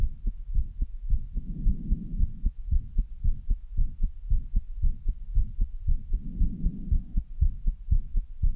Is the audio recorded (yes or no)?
yes